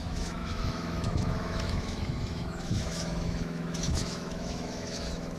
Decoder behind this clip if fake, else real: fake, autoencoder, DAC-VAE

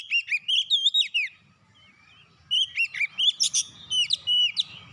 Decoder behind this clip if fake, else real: real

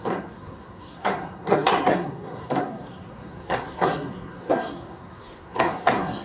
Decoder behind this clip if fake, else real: fake, codec, SNAC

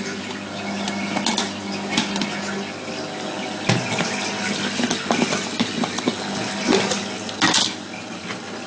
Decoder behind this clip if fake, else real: real